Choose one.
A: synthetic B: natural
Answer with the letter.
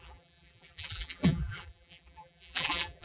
A